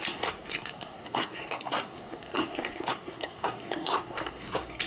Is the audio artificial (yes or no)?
yes